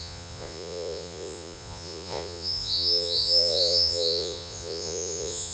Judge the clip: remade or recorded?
remade